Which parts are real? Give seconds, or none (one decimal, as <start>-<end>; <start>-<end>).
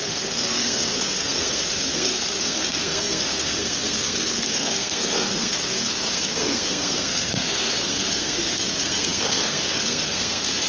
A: none